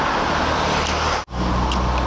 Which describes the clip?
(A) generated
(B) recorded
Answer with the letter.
B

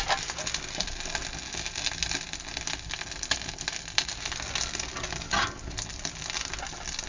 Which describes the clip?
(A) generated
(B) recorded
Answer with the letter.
B